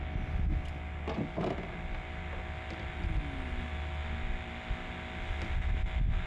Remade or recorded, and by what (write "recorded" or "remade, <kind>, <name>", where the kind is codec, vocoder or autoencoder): recorded